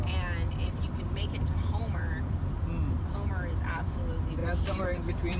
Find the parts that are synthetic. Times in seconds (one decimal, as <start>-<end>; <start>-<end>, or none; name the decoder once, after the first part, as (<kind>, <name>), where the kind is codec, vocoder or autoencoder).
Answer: 0.6-1.3 (vocoder, BigVGAN v2); 4.4-5.4